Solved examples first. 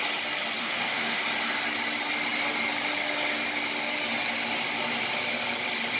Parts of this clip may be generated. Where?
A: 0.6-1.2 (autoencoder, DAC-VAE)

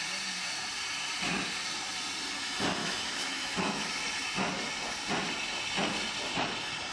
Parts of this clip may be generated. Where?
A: 2.8-3.9 (autoencoder, DAC-VAE)

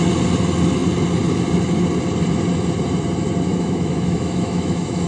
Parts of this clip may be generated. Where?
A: 3.5-5.1 (autoencoder, DAC-VAE)

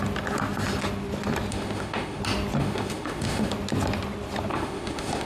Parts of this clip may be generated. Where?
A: 1.5-2.2 (autoencoder, DAC-VAE); 2.6-3.5; 4.5-5.3

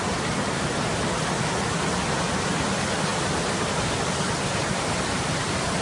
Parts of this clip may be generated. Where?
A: none